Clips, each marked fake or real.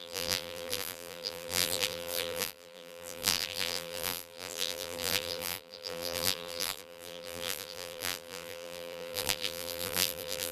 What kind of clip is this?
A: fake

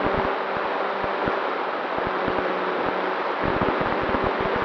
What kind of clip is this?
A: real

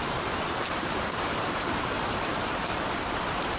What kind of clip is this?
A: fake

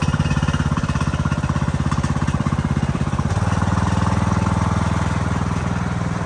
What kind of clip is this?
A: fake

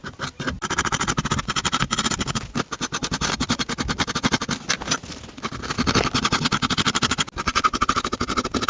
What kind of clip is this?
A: real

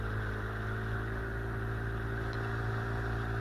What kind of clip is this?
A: real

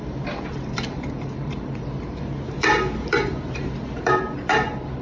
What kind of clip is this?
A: fake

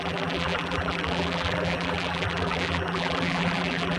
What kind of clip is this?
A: fake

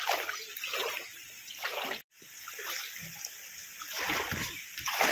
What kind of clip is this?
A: real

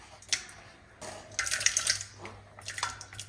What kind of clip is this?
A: real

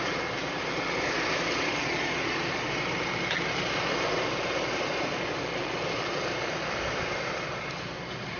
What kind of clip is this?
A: fake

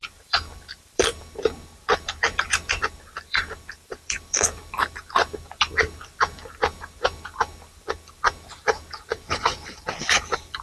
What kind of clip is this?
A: fake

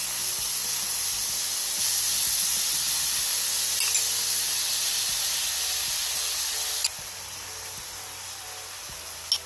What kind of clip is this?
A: real